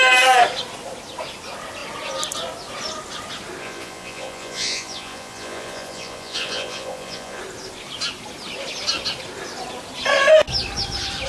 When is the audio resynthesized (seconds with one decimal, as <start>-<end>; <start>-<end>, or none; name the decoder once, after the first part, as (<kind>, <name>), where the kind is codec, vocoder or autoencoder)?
3.6-7.4 (vocoder, Vocos)

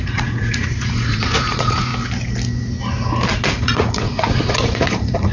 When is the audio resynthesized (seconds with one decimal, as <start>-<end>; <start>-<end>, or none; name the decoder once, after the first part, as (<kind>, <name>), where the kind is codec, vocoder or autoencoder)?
0.0-1.9 (vocoder, Vocos); 3.5-5.3

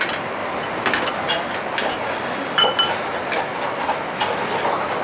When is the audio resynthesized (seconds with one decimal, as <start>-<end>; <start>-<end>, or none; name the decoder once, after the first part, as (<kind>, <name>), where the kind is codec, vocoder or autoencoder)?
1.8-2.7 (codec, DAC)

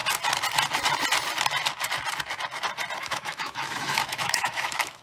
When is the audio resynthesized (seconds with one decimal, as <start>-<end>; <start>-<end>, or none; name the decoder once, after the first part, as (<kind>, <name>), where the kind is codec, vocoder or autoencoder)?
3.0-5.0 (autoencoder, DAC-VAE)

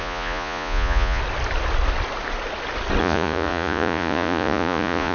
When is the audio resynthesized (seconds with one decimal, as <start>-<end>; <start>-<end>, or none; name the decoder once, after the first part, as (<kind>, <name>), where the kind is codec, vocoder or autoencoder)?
0.0-1.2 (vocoder, Vocos); 3.0-5.1

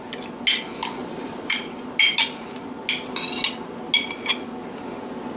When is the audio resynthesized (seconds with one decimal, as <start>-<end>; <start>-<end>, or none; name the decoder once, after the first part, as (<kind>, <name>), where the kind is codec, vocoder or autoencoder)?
1.0-1.9 (vocoder, BigVGAN v2)

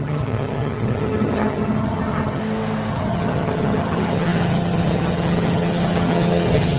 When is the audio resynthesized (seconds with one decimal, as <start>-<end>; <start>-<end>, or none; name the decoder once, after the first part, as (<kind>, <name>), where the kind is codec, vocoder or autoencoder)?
0.0-2.4 (vocoder, HiFi-GAN); 2.9-6.8

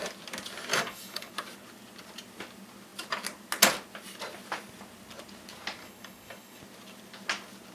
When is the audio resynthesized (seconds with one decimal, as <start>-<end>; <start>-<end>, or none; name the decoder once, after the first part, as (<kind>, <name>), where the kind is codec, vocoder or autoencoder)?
0.7-1.3 (codec, DAC); 5.8-6.6